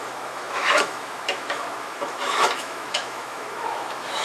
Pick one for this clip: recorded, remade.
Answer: remade